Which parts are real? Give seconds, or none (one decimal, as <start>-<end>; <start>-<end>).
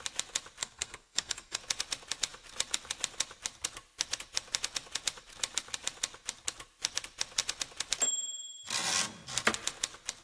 0.0-0.6; 1.6-10.2